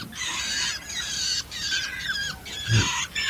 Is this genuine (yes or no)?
yes